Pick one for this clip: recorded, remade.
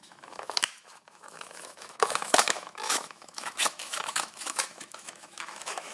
remade